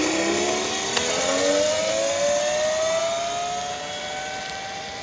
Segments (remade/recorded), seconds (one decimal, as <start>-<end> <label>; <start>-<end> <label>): 0.0-5.0 recorded